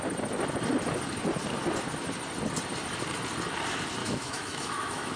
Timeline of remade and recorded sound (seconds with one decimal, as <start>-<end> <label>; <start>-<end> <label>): 0.0-4.0 recorded; 4.0-5.2 remade